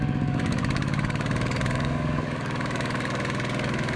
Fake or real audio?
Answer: fake